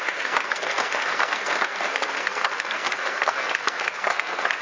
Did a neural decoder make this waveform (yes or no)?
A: yes